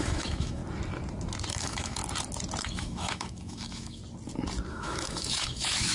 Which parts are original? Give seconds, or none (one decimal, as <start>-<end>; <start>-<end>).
0.6-1.5; 2.0-2.6; 4.0-4.7